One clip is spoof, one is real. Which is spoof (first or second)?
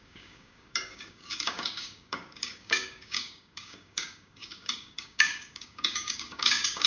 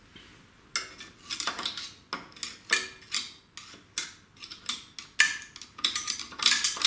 first